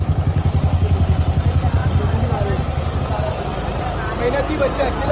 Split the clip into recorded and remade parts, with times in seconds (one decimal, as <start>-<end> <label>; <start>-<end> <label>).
0.0-5.1 recorded